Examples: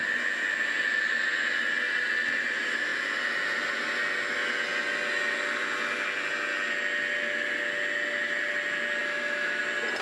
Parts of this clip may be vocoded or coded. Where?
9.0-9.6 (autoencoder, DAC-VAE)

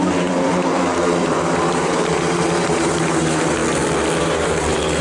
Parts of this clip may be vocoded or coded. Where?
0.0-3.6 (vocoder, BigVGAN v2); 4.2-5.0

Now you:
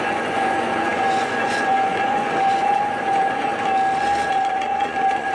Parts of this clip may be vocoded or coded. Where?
0.0-3.5 (vocoder, Vocos); 4.3-5.3

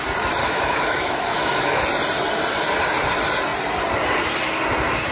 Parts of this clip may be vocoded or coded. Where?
0.4-1.8 (autoencoder, DAC-VAE)

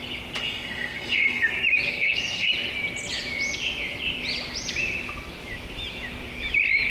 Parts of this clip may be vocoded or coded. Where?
0.4-1.5 (codec, SNAC); 1.9-2.5